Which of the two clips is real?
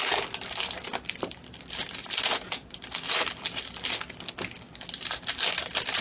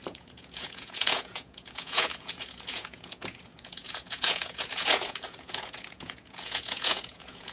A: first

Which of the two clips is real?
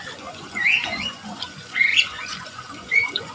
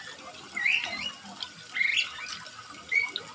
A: second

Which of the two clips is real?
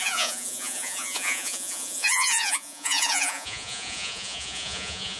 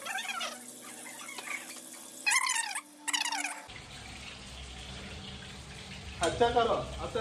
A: second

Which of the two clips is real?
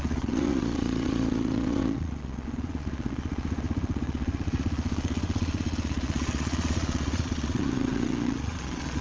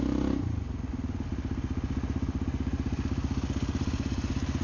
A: second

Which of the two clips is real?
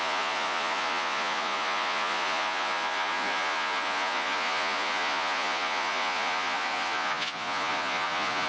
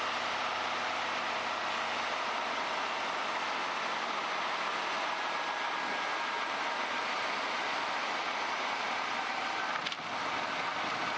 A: second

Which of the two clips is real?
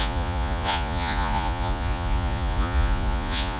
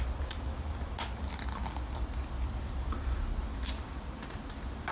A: second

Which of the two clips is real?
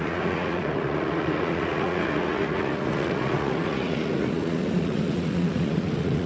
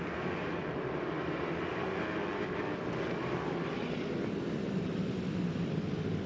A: second